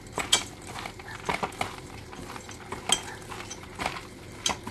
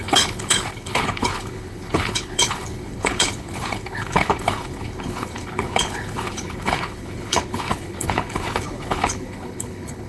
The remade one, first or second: second